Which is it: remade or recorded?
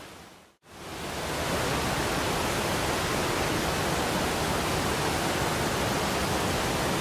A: recorded